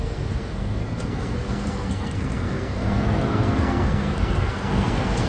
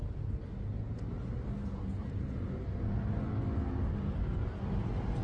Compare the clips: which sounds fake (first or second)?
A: first